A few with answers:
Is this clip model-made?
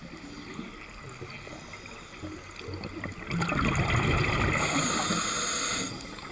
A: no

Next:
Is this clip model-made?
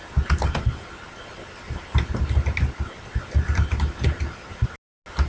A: no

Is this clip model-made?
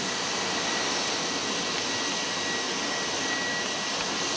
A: no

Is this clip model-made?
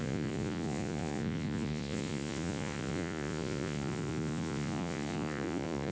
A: yes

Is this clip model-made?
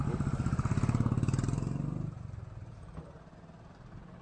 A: no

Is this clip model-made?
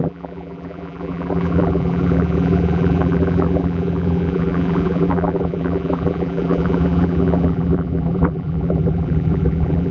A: yes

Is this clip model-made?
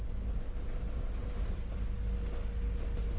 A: no